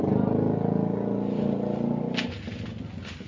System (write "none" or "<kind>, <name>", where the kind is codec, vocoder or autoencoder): none